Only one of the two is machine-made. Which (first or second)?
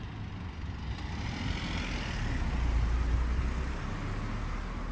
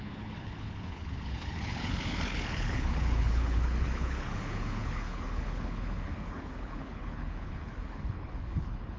second